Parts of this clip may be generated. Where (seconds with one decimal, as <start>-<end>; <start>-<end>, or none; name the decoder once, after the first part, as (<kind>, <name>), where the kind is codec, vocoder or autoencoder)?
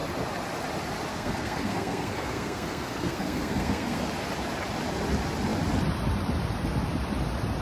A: 1.1-4.1 (codec, SNAC)